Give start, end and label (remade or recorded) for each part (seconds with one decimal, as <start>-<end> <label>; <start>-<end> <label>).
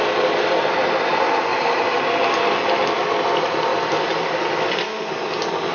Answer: 0.0-5.7 recorded